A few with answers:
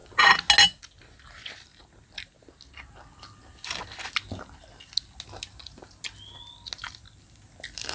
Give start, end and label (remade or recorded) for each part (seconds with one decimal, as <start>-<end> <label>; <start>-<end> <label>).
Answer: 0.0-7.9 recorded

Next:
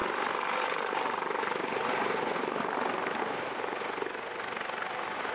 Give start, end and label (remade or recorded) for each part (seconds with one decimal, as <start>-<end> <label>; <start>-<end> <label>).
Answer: 0.0-5.3 recorded

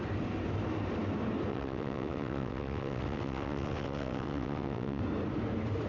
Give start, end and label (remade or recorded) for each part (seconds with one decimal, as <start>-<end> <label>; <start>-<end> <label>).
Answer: 0.0-1.5 recorded; 1.5-5.0 remade; 5.0-5.9 recorded